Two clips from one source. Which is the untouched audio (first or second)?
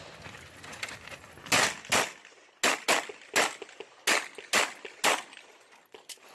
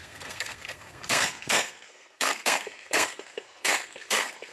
first